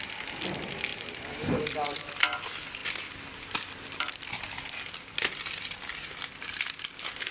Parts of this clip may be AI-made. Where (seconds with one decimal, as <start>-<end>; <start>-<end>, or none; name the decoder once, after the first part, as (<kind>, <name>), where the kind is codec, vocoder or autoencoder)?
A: 0.9-1.6 (vocoder, BigVGAN v2)